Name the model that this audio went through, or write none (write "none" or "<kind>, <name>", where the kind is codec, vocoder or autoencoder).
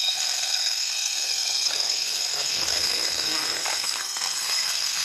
codec, SNAC